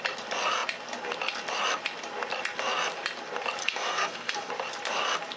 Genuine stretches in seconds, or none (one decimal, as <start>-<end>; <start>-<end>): 0.0-3.6; 4.5-5.4